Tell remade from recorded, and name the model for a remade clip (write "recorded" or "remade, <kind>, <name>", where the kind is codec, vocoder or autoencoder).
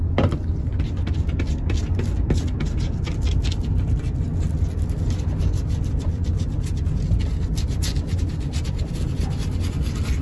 recorded